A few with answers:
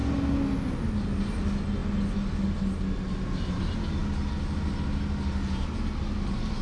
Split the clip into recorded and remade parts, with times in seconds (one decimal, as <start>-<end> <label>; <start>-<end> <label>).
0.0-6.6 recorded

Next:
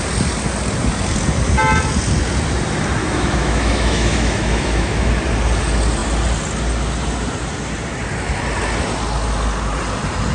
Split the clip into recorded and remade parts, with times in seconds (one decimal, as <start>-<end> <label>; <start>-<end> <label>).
0.0-3.0 recorded; 3.0-5.1 remade; 5.1-10.3 recorded

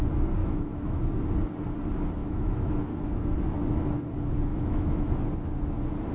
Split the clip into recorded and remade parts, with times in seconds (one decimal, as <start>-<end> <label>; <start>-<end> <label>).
0.0-0.4 recorded; 0.4-1.0 remade; 1.0-2.2 recorded; 2.2-2.8 remade; 2.8-4.5 recorded; 4.5-5.1 remade; 5.1-6.1 recorded

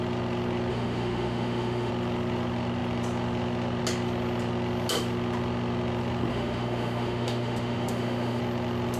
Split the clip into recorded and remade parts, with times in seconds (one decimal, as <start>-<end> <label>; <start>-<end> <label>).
0.0-0.7 recorded; 0.7-1.9 remade; 1.9-6.3 recorded; 6.3-8.4 remade; 8.4-9.0 recorded

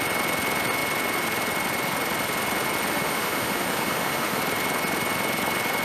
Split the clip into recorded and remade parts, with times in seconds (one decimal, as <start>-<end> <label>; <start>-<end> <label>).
0.0-2.9 recorded; 2.9-4.4 remade; 4.4-5.8 recorded